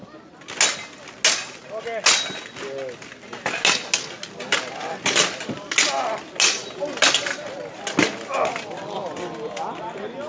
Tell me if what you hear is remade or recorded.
recorded